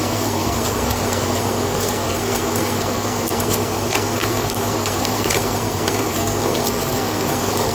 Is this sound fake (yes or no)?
yes